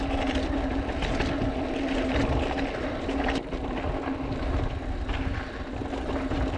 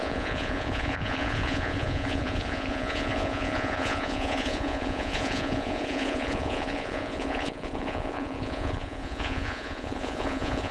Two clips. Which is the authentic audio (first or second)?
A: first